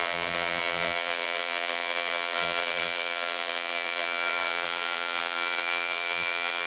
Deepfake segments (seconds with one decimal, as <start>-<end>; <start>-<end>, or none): 0.0-6.7

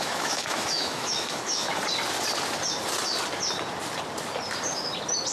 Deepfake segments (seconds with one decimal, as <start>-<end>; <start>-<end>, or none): 0.0-1.7

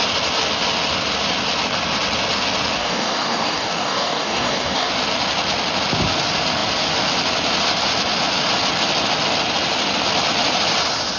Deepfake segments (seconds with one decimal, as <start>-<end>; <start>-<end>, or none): 2.8-4.9

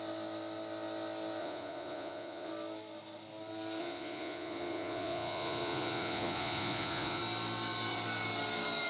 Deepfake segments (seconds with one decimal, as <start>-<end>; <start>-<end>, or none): 1.4-2.5; 3.8-7.2

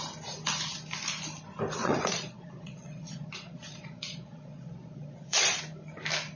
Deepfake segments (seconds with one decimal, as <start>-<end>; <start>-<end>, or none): 1.8-5.6

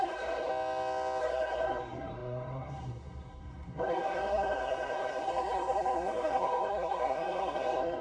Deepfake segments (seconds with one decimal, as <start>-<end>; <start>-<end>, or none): 0.0-0.5; 1.2-8.0

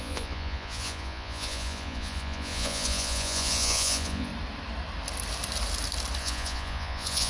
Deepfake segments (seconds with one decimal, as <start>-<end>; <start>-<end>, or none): 0.0-4.3; 6.2-7.3